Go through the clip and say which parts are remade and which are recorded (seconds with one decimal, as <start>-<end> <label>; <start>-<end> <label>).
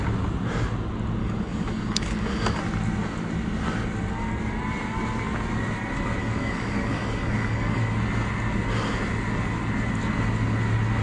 0.0-1.2 recorded; 1.2-2.6 remade; 2.6-6.2 recorded; 6.2-7.8 remade; 7.8-11.0 recorded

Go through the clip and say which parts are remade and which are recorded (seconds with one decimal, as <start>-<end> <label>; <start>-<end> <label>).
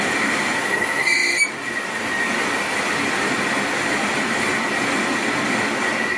0.0-6.2 recorded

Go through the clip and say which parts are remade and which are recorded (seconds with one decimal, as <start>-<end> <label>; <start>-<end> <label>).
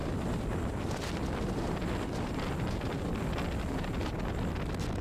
0.0-3.0 remade; 3.0-5.0 recorded